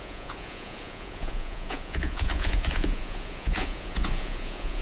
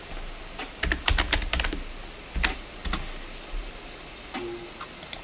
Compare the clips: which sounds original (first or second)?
second